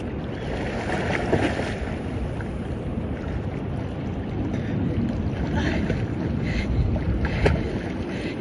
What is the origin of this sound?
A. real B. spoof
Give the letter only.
A